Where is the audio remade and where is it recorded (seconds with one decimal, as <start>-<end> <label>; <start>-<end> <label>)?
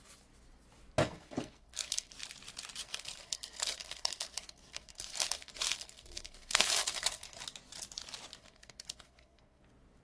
0.0-1.0 recorded; 1.0-2.1 remade; 2.1-2.8 recorded; 2.8-7.4 remade; 7.4-8.4 recorded; 8.4-9.6 remade; 9.6-10.0 recorded